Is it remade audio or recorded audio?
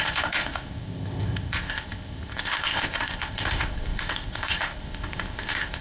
remade